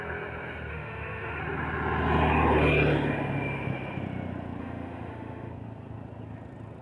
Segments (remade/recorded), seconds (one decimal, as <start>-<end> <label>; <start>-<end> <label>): 0.0-0.7 recorded; 0.7-1.4 remade; 1.4-4.6 recorded; 4.6-5.5 remade; 5.5-6.8 recorded